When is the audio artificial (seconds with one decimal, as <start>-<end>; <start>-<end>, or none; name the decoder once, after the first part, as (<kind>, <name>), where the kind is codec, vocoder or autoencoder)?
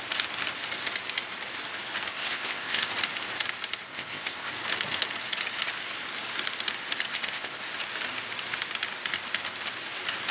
2.1-2.9 (codec, ZipCodec); 3.9-4.5; 7.1-7.6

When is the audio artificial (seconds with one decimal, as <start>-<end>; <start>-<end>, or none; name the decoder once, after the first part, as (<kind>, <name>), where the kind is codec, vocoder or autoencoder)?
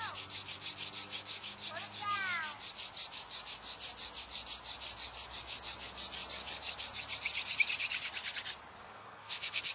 8.8-9.7 (codec, SNAC)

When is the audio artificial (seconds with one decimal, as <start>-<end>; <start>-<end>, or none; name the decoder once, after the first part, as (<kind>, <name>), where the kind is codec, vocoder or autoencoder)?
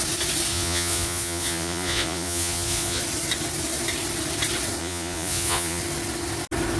0.5-3.0 (vocoder, Vocos); 4.8-5.8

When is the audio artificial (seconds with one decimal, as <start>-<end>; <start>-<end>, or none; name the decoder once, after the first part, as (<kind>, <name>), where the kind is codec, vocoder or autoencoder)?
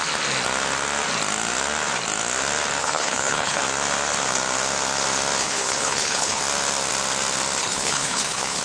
2.8-3.6 (codec, HILCodec); 5.4-6.4; 7.6-8.6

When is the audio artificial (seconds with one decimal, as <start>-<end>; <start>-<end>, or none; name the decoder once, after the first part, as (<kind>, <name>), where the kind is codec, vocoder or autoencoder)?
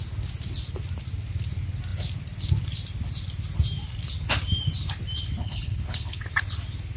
5.4-6.2 (codec, HILCodec)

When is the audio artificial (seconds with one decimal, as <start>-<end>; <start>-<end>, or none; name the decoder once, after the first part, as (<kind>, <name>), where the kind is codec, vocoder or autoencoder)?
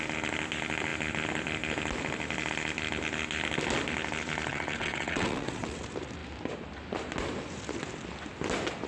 4.5-5.8 (vocoder, WaveNeXt)